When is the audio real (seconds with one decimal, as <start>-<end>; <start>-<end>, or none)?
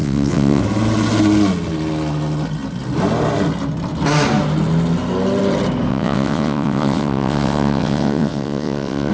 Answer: 0.6-5.9